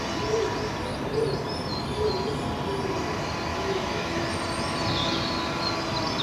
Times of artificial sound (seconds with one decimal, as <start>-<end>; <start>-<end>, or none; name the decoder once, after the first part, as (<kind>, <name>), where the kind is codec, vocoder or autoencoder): 3.5-4.2 (autoencoder, DAC-VAE)